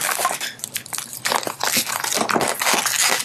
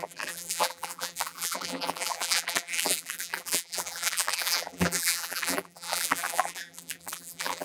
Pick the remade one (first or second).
second